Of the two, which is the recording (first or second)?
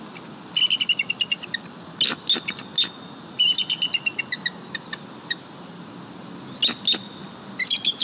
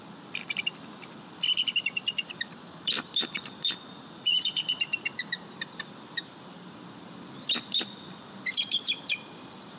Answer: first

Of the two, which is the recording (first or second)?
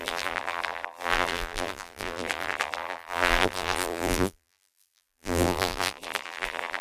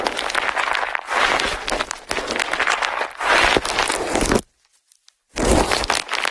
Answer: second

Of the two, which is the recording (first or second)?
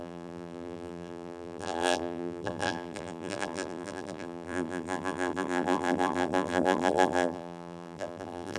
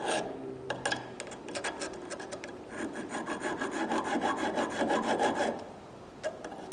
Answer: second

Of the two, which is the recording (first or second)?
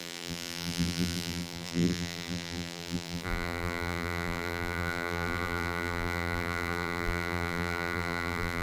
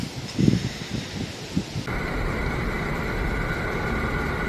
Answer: second